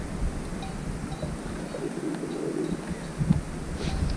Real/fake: real